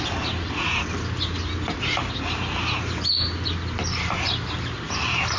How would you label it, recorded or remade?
recorded